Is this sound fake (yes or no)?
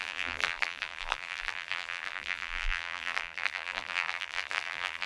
yes